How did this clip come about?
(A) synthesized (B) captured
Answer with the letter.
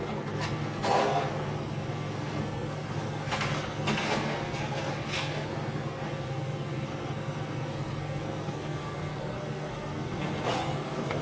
A